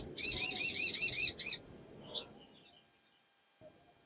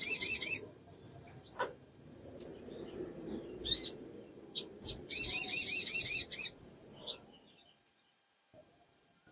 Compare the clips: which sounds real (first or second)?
first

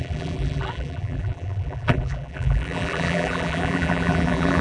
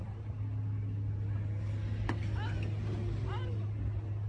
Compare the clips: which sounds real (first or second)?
second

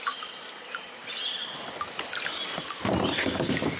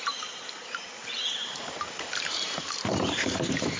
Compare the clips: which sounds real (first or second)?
first